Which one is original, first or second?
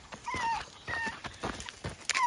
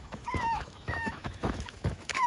first